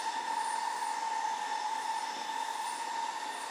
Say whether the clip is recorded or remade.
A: recorded